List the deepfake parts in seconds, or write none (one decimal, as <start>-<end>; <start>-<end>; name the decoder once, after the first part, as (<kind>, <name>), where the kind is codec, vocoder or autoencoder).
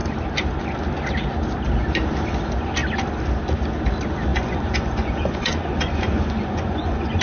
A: 4.3-7.2 (vocoder, Vocos)